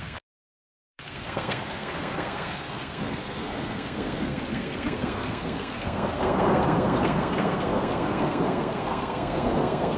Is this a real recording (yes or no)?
no